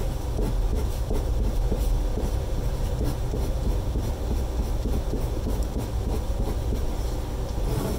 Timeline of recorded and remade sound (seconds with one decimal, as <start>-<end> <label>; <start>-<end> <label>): 0.0-0.7 recorded; 0.7-1.9 remade; 1.9-8.0 recorded